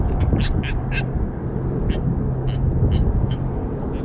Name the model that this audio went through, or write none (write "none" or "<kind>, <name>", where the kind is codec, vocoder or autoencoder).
none